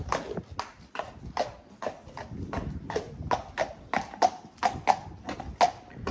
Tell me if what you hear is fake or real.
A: real